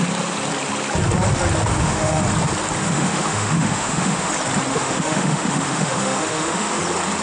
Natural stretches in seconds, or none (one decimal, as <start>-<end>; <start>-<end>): 0.0-1.7; 2.2-2.8; 4.3-4.7; 6.8-7.2